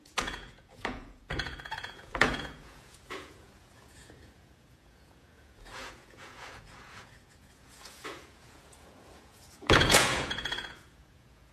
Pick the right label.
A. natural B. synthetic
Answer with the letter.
B